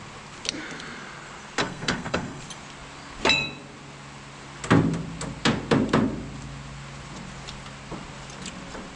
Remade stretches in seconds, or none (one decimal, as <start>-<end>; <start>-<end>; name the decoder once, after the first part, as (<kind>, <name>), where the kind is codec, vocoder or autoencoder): 1.6-2.4 (codec, SNAC)